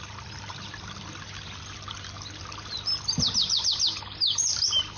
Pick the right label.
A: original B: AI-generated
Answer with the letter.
A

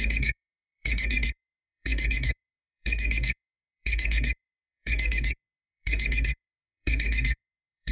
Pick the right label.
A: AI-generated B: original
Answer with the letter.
A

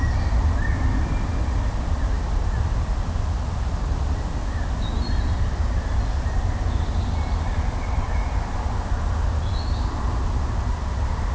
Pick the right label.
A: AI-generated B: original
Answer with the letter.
B